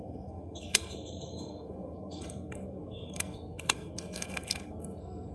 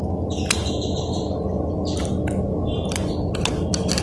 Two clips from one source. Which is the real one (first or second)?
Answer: second